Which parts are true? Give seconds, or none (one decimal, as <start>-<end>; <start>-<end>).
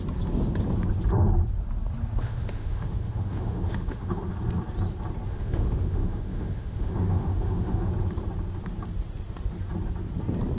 0.0-2.2; 4.2-5.3; 7.9-10.6